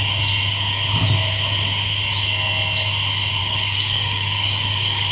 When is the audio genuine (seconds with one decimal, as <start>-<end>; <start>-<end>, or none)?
0.0-3.4